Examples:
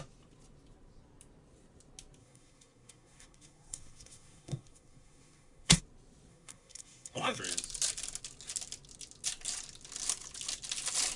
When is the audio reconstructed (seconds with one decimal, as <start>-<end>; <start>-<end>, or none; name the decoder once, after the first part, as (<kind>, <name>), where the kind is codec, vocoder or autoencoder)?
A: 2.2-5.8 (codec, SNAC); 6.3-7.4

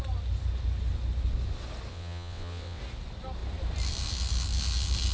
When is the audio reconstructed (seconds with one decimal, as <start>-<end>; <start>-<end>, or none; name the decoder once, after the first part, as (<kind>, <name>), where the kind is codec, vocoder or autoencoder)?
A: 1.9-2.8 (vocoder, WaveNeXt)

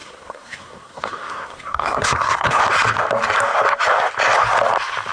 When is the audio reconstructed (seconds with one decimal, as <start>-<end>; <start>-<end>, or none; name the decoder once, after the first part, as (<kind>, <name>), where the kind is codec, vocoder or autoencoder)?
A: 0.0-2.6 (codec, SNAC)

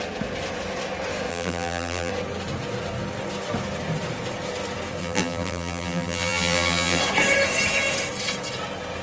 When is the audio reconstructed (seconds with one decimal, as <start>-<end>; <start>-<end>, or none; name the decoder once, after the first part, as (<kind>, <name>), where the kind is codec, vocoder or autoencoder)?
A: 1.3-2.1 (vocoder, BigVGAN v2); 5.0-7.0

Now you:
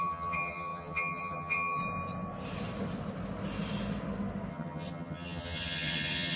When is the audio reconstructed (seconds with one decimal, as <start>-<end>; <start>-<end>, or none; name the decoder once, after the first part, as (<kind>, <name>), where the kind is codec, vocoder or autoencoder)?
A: 0.0-1.8 (vocoder, HiFi-GAN); 4.5-6.4

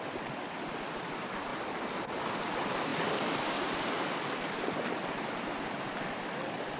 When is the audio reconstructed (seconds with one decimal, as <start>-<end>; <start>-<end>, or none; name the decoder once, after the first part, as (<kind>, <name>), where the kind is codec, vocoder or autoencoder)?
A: 0.0-1.5 (vocoder, BigVGAN v2); 2.3-6.8

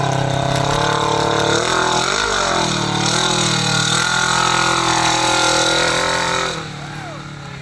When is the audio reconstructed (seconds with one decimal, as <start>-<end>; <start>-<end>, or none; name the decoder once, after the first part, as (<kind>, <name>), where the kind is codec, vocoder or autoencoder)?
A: none